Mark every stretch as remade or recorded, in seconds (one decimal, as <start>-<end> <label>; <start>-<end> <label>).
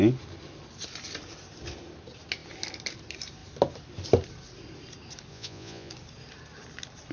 0.0-5.3 recorded; 5.3-5.9 remade; 5.9-7.1 recorded